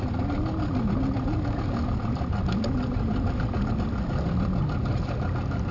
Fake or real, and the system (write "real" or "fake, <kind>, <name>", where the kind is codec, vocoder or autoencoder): real